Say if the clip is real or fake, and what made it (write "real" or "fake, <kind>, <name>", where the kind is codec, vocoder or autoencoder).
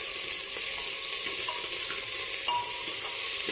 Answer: real